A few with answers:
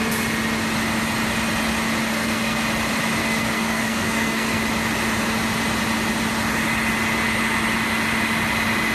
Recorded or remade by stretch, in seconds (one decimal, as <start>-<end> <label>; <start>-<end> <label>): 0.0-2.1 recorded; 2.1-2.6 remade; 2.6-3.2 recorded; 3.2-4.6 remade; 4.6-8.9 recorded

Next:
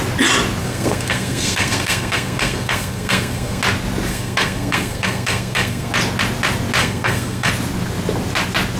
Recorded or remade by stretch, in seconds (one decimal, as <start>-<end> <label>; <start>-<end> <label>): 0.0-0.6 recorded; 0.6-3.6 remade; 3.6-4.1 recorded; 4.1-5.9 remade; 5.9-6.8 recorded; 6.8-7.5 remade; 7.5-8.8 recorded

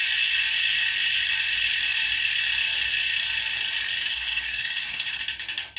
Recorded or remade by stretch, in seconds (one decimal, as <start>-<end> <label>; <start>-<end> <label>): 0.0-4.1 recorded; 4.1-5.2 remade; 5.2-5.8 recorded